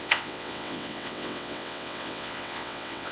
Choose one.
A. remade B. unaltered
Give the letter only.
A